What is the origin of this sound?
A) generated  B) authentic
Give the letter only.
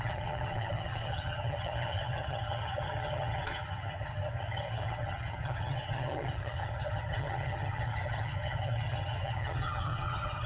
A